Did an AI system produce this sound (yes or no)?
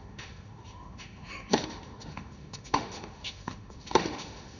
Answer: yes